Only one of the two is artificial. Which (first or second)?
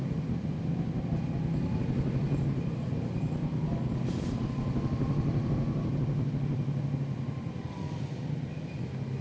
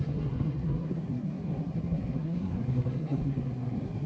second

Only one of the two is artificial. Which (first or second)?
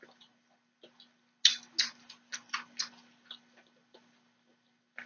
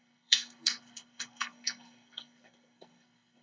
second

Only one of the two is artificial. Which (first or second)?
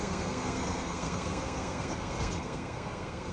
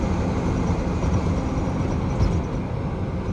first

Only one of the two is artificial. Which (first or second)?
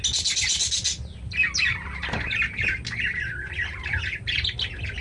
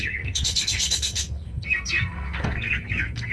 second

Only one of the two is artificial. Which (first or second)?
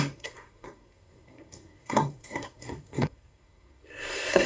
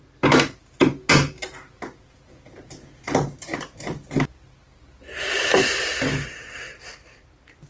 first